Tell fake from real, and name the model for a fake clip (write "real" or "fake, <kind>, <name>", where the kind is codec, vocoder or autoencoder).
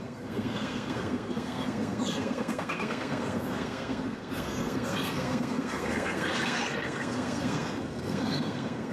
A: fake, codec, SNAC